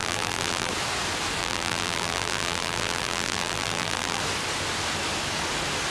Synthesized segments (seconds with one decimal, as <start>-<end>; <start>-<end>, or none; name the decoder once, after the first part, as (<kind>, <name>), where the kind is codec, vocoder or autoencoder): 0.0-0.7 (vocoder, BigVGAN v2); 1.4-4.2